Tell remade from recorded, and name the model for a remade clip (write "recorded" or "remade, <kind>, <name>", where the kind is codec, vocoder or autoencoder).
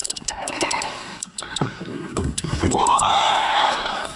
remade, codec, SNAC